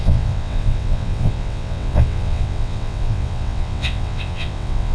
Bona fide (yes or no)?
no